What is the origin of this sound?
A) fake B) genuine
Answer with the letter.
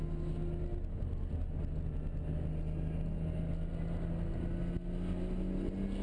B